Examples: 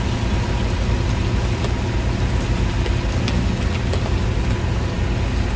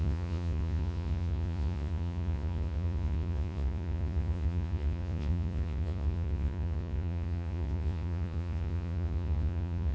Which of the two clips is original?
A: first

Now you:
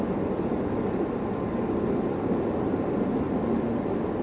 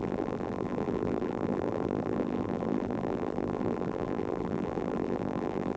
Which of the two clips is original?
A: first